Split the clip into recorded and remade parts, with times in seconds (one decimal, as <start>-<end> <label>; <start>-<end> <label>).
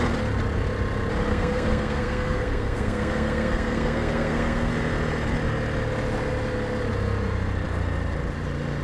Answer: 0.0-1.3 recorded; 1.3-4.7 remade; 4.7-8.8 recorded